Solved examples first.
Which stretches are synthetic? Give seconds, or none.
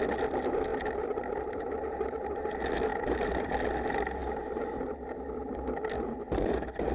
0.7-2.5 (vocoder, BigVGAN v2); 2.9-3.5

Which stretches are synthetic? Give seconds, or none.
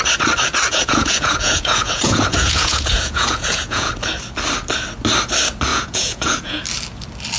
0.7-3.9 (vocoder, Vocos); 5.7-6.6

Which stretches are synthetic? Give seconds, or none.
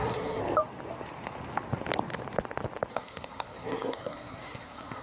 0.0-0.4 (codec, SNAC); 2.9-5.0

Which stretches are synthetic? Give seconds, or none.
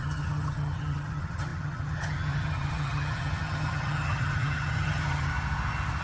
0.0-5.3 (vocoder, HiFi-GAN)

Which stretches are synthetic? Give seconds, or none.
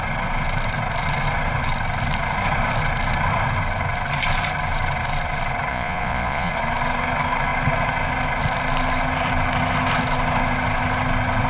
5.7-6.5 (vocoder, Vocos)